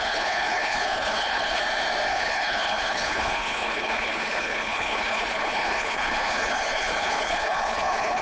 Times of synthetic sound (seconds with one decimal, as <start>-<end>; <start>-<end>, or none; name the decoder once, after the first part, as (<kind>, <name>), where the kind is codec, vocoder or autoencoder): 0.0-1.6 (codec, HILCodec); 2.1-8.2